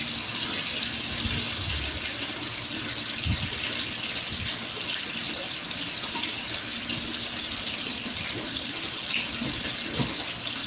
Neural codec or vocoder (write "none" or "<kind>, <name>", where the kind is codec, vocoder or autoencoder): none